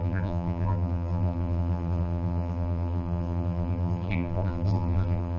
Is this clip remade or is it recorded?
remade